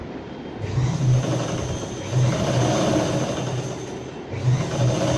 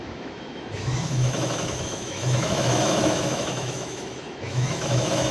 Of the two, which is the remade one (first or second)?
second